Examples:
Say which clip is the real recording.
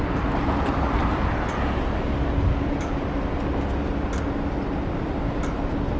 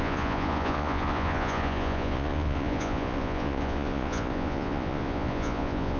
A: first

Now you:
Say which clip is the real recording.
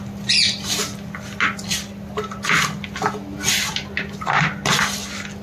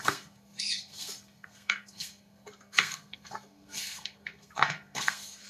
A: first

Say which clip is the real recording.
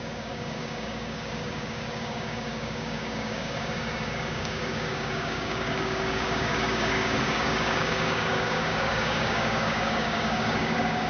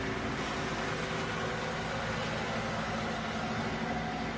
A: second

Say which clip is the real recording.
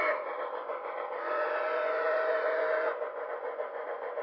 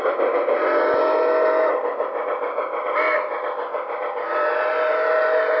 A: second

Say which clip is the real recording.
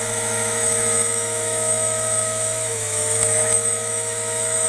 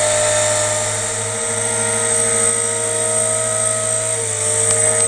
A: second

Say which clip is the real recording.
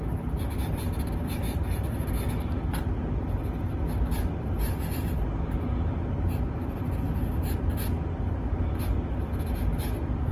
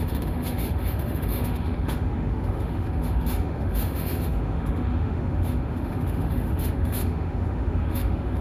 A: first